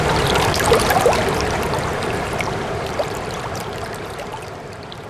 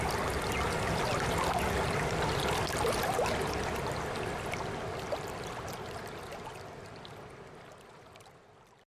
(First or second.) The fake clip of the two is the first